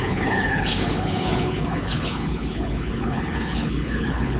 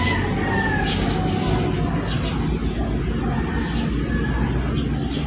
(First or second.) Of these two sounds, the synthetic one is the first